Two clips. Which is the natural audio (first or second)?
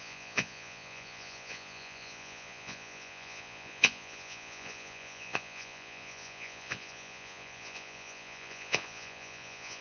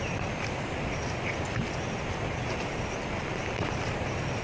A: second